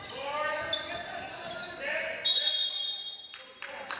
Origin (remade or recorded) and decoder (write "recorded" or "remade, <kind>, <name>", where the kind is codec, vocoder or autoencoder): recorded